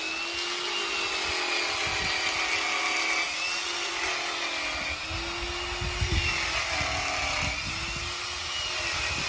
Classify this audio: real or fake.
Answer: real